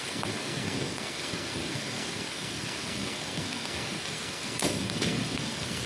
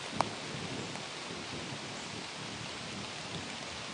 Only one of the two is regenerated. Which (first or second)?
first